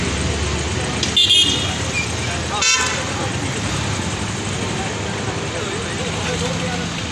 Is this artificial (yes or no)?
no